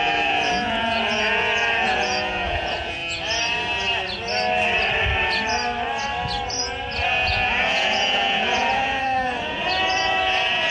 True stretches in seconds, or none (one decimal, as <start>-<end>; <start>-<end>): 3.0-7.1